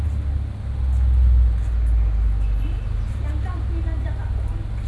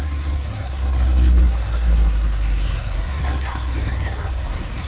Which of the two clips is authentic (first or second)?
first